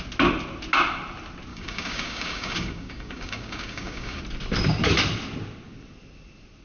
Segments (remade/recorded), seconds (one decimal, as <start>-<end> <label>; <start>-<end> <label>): 0.0-1.5 recorded; 1.5-4.2 remade; 4.2-6.6 recorded